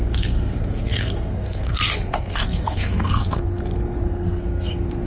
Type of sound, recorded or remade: remade